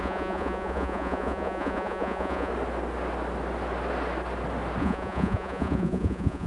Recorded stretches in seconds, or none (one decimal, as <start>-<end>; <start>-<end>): 2.5-4.8